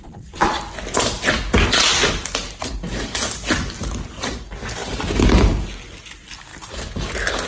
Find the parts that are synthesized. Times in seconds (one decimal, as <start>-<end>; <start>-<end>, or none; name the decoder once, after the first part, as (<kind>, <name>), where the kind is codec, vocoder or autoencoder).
0.0-0.6 (vocoder, Vocos)